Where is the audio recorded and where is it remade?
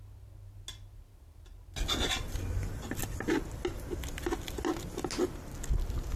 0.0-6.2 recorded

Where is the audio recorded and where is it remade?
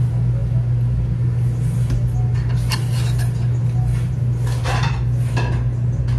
0.0-6.2 recorded